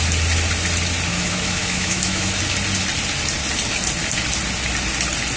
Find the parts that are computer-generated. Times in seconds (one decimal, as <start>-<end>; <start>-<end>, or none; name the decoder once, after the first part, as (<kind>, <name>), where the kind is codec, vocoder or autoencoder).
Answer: 1.1-2.4 (autoencoder, DAC-VAE)